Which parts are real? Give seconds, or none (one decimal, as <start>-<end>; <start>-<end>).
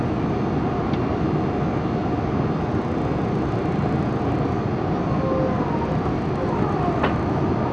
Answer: 0.0-7.7